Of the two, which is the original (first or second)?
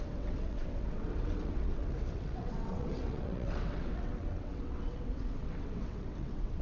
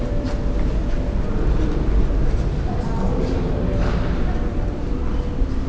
second